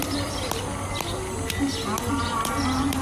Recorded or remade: recorded